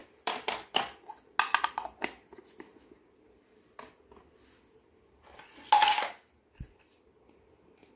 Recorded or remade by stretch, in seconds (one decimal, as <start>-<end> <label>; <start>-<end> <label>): 0.0-0.8 remade; 0.8-8.0 recorded